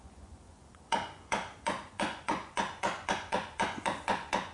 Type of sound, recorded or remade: remade